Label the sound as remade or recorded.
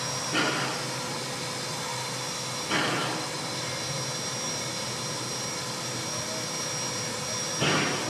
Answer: recorded